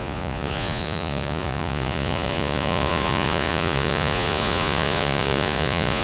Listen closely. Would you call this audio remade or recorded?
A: remade